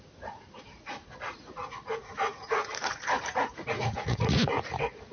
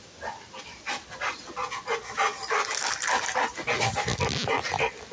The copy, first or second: first